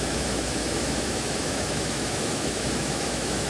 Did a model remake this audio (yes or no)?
yes